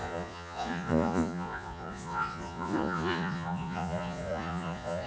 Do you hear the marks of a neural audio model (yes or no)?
yes